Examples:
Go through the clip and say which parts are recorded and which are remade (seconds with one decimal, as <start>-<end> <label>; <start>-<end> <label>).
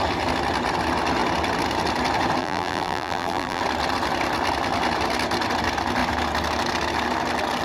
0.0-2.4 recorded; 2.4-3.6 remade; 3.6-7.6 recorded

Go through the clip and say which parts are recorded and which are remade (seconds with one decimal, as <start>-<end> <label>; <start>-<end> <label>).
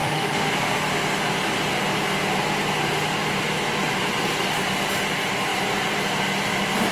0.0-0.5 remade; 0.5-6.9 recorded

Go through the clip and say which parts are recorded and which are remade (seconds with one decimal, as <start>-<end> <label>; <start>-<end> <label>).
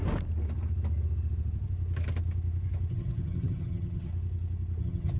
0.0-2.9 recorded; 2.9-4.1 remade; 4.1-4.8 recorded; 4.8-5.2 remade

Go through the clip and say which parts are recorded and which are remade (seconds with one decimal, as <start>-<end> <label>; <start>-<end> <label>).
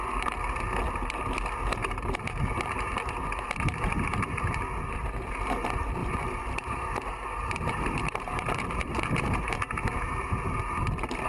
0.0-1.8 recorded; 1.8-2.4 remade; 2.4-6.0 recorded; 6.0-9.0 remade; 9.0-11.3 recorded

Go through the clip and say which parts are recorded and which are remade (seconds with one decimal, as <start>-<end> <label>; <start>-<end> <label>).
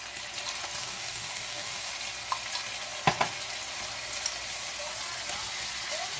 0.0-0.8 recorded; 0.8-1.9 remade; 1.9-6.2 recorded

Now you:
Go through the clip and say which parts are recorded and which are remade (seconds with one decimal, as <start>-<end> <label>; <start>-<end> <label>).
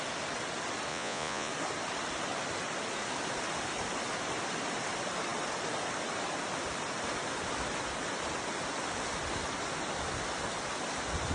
0.0-0.9 recorded; 0.9-1.5 remade; 1.5-11.3 recorded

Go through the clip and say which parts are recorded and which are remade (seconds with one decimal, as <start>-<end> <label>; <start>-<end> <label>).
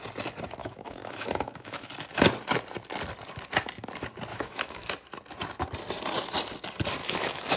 0.0-0.6 recorded; 0.6-1.9 remade; 1.9-4.3 recorded; 4.3-4.9 remade; 4.9-7.0 recorded; 7.0-7.6 remade